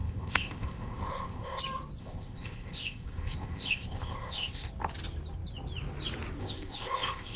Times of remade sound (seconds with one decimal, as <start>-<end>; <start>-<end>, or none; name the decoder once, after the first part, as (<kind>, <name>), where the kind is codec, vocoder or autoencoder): 0.0-1.6 (codec, ZipCodec); 2.0-4.7; 6.4-7.4